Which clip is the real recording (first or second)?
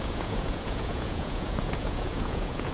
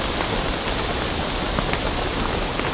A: second